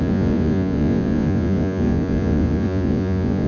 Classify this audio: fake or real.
fake